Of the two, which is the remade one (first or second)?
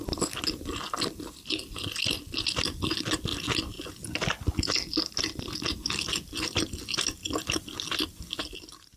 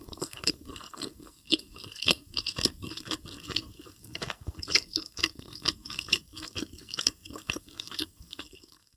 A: second